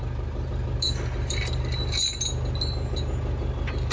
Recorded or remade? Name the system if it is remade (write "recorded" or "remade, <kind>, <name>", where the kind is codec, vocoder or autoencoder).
recorded